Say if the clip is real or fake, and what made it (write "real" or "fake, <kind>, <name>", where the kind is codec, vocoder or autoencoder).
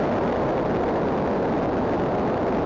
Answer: real